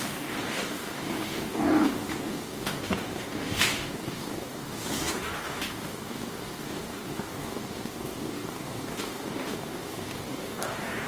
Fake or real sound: fake